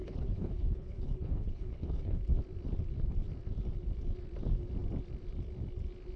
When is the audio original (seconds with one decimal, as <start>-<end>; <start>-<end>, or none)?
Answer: 2.2-6.2